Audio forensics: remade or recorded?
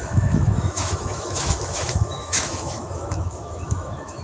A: remade